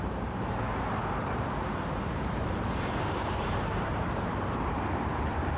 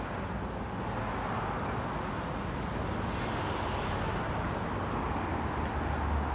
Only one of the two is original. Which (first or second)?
second